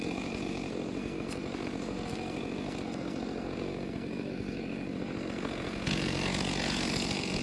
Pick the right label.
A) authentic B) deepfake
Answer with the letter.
B